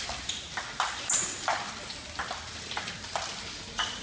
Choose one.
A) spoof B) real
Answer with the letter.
B